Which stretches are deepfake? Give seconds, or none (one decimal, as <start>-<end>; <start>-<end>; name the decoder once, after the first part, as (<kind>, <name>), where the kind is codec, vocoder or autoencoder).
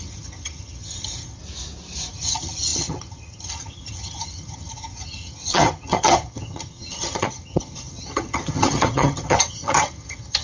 0.0-1.4 (vocoder, HiFi-GAN); 2.1-10.4